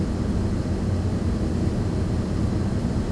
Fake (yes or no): no